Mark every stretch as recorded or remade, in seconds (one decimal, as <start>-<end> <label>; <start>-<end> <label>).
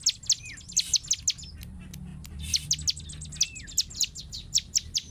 0.0-5.1 recorded